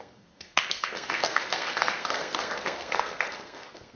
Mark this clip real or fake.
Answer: fake